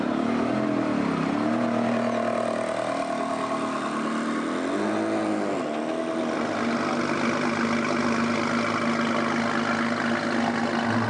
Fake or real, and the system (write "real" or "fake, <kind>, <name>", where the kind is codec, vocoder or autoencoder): real